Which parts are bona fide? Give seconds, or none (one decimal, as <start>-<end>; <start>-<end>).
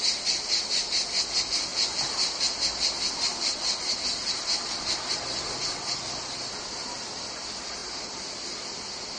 0.0-9.2